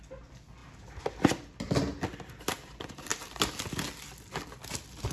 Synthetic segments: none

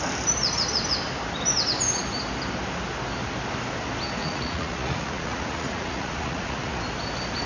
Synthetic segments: 4.2-6.8 (vocoder, Vocos)

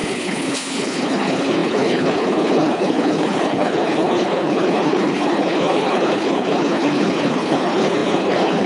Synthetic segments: 0.0-8.7 (codec, HILCodec)

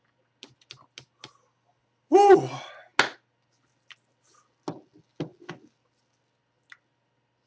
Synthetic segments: none